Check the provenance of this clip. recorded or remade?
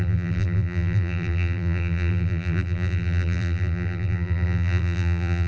remade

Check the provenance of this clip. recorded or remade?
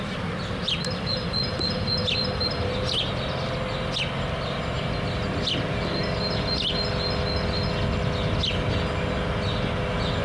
recorded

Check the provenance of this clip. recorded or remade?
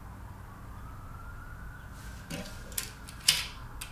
recorded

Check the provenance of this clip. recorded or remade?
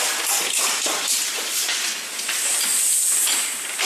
recorded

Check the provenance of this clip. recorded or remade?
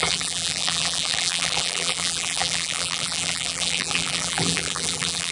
remade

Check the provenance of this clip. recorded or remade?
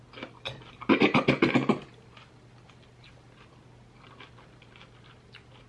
recorded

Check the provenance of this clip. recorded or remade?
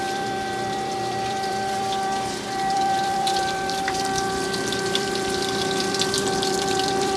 remade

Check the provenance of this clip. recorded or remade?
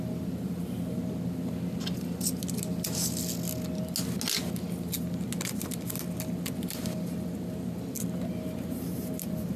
recorded